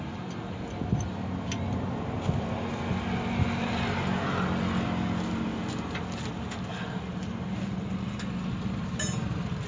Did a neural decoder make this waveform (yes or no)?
no